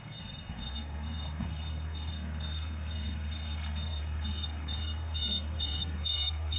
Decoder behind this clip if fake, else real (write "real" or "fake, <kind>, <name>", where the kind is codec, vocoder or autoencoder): fake, codec, SNAC